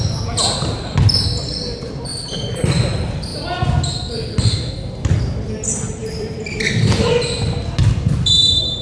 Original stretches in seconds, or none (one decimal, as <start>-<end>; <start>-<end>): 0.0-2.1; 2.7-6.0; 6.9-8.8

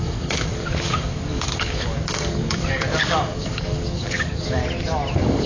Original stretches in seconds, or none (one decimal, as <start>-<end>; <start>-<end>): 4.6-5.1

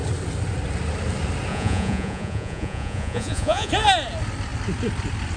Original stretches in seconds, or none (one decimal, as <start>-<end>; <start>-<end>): 0.0-1.5; 3.7-5.4

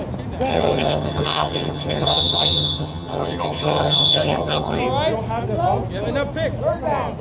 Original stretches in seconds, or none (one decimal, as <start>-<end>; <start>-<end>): 0.0-0.5; 4.8-7.2

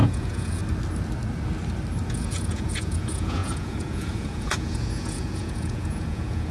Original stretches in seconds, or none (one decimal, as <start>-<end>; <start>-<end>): 0.6-2.1

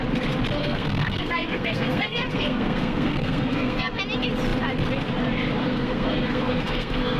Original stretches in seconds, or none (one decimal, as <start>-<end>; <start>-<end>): 0.0-0.6; 4.0-5.6

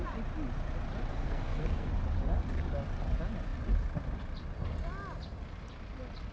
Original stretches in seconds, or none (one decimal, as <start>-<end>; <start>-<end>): 0.0-1.1; 1.9-6.3

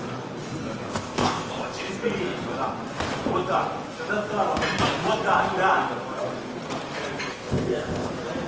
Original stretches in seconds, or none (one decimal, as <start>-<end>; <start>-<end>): 0.0-0.9; 1.9-7.3; 8.1-8.5